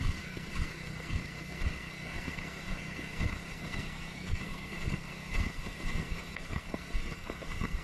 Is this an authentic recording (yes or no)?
no